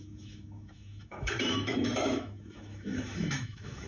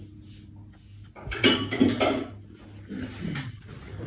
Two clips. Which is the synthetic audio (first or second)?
first